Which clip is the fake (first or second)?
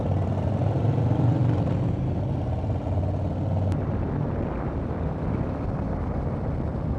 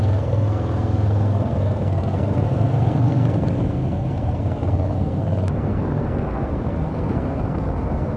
second